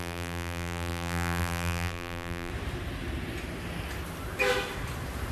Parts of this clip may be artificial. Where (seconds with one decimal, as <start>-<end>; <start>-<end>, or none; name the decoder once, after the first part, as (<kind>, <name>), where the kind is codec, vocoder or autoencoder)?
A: 0.0-2.5 (vocoder, BigVGAN v2)